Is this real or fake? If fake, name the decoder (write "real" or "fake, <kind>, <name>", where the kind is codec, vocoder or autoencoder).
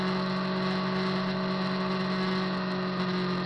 real